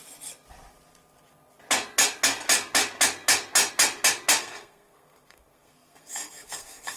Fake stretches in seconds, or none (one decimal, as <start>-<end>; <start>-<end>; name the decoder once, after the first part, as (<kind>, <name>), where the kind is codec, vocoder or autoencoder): 4.4-7.0 (codec, SNAC)